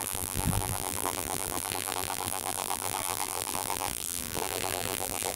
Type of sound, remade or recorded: remade